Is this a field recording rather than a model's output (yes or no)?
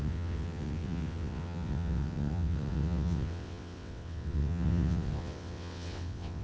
no